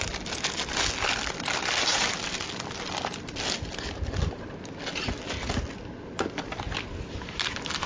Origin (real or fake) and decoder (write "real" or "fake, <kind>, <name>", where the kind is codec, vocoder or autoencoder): real